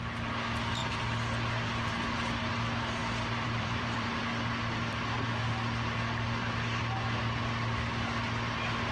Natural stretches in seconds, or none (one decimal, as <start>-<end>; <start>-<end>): 0.0-3.0; 4.2-8.9